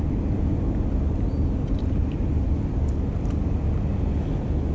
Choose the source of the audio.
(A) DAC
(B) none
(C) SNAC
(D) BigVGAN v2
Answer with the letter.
B